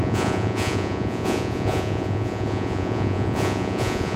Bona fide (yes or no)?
no